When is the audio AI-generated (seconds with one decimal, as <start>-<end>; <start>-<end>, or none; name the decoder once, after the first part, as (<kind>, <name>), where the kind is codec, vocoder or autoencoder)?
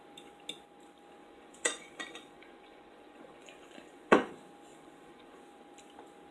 1.2-4.3 (vocoder, Vocos); 4.7-5.4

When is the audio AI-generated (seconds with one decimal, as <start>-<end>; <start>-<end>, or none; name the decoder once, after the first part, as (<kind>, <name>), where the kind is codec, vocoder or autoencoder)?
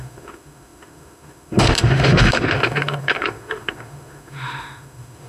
0.0-5.3 (autoencoder, DAC-VAE)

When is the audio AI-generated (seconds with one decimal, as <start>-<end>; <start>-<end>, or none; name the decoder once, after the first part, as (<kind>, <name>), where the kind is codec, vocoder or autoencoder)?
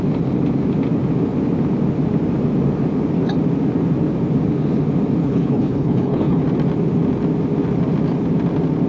5.2-6.4 (codec, HILCodec)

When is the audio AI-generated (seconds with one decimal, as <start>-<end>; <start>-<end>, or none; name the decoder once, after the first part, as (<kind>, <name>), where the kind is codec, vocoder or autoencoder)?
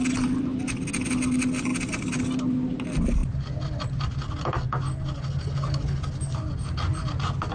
none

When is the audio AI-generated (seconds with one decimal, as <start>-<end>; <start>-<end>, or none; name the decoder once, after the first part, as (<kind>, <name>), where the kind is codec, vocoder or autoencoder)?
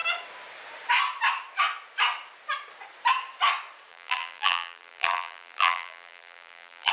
3.9-6.9 (vocoder, BigVGAN v2)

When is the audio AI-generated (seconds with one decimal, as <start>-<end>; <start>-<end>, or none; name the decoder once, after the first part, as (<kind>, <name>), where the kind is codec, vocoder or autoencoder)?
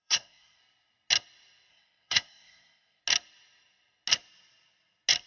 0.0-0.6 (codec, SNAC); 1.7-3.0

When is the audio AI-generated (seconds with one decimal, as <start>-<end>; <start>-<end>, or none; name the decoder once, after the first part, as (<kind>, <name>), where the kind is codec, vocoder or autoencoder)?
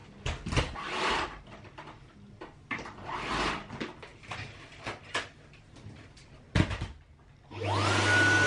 0.0-3.6 (vocoder, BigVGAN v2); 4.1-6.3